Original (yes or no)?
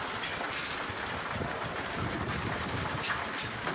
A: yes